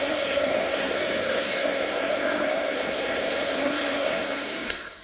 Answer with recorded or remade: remade